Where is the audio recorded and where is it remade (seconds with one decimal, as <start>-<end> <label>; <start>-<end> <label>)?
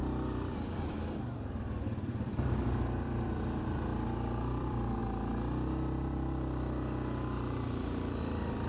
0.0-3.9 remade; 3.9-4.6 recorded; 4.6-5.0 remade; 5.0-8.2 recorded; 8.2-8.7 remade